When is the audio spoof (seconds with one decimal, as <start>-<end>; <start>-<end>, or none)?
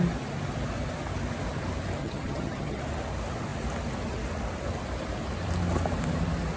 2.0-2.8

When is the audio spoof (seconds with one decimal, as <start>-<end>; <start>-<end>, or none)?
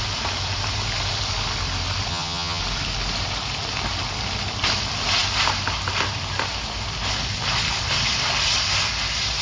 2.1-2.6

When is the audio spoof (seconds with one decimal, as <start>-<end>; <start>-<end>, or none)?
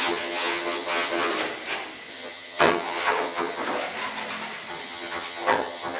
0.0-1.3; 2.1-3.6; 4.7-6.0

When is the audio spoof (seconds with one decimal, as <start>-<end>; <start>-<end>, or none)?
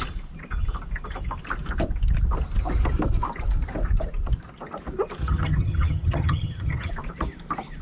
5.2-6.9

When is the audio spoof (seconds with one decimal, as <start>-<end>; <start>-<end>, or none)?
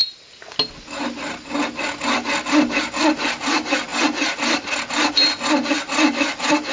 none